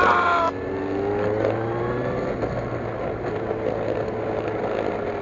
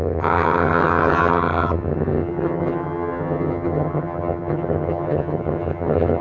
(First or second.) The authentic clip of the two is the first